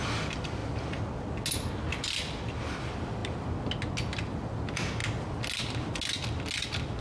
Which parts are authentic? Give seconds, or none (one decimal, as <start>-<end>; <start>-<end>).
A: 0.0-7.0